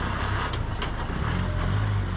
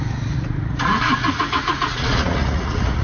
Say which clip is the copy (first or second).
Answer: second